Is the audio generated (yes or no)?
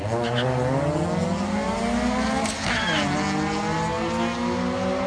no